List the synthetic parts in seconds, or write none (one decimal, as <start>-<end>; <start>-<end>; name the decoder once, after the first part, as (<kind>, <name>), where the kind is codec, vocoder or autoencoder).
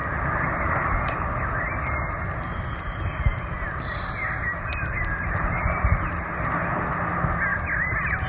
7.5-8.3 (vocoder, BigVGAN v2)